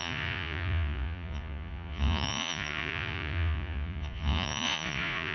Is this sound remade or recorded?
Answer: remade